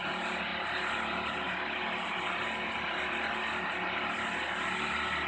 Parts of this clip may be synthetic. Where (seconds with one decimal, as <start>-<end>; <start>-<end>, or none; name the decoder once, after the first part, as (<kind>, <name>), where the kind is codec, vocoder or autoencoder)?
none